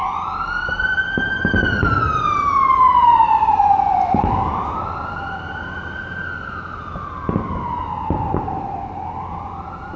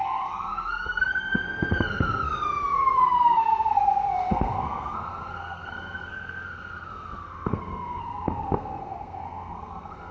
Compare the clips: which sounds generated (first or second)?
second